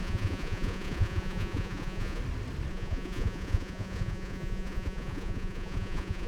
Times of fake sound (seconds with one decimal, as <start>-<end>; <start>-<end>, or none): 0.0-2.2; 2.7-6.3

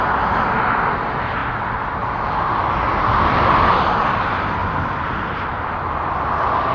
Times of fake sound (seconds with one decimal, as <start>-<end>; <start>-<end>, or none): none

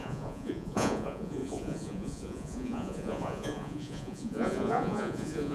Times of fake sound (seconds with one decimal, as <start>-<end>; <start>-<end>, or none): 0.0-5.5

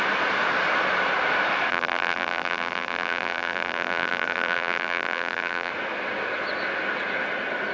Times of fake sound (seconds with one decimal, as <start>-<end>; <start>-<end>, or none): 1.7-5.7

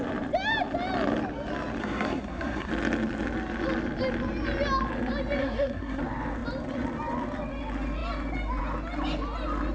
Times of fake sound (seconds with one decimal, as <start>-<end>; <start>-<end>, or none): 1.8-2.7; 5.4-6.0

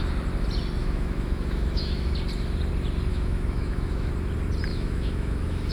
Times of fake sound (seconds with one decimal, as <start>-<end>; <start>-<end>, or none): 0.8-2.1; 3.1-4.1; 4.7-5.7

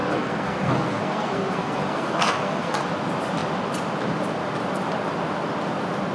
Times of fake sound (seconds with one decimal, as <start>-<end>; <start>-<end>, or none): 0.0-2.8